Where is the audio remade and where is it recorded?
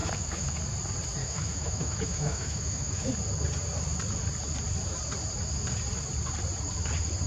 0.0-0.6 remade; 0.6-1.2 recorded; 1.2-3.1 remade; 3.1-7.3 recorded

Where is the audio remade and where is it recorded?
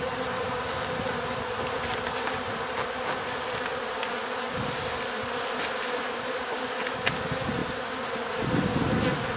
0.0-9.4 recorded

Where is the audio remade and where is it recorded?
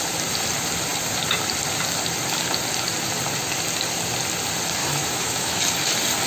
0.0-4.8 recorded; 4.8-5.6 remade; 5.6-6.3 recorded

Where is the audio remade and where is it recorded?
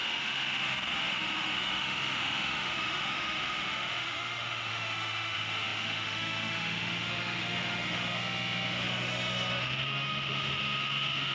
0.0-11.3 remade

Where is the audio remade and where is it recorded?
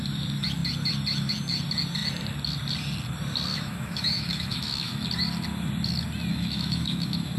0.0-3.5 recorded; 3.5-5.1 remade; 5.1-6.3 recorded; 6.3-7.4 remade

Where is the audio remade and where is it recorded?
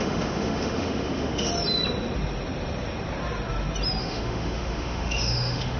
0.0-1.5 remade; 1.5-4.0 recorded; 4.0-5.8 remade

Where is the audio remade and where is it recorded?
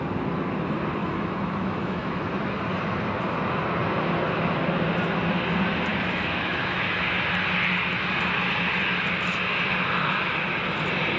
0.0-1.0 recorded; 1.0-2.2 remade; 2.2-5.9 recorded; 5.9-7.0 remade; 7.0-11.2 recorded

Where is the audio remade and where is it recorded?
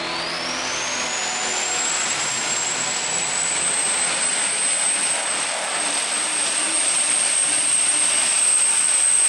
0.0-9.3 recorded